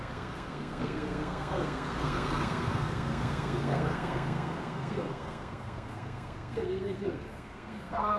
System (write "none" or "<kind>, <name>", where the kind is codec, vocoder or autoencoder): codec, SNAC